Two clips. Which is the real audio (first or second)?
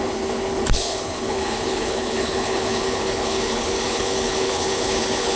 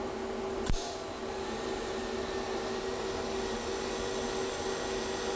second